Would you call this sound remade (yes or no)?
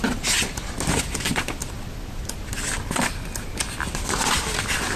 no